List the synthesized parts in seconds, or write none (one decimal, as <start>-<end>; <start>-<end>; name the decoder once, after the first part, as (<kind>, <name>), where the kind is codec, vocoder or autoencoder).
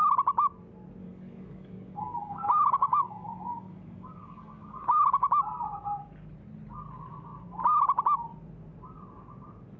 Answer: 1.0-5.3 (codec, DAC)